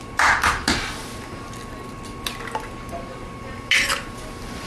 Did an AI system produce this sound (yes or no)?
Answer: no